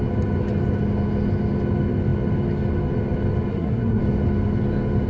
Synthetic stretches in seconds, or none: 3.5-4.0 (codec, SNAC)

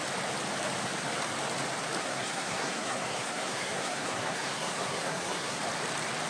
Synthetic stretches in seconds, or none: 2.0-5.6 (codec, SNAC)

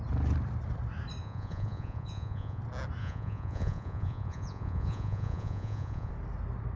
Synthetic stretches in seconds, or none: 1.2-2.6 (vocoder, Vocos); 3.0-6.1

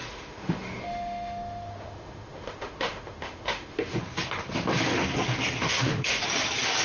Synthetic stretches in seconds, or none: 0.0-4.0 (autoencoder, DAC-VAE); 5.6-6.2

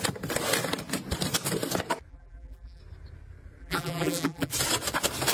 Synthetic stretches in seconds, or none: 2.1-2.8 (vocoder, BigVGAN v2); 3.6-4.5

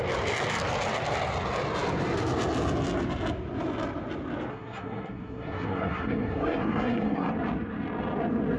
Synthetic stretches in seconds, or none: 4.5-7.3 (codec, SNAC)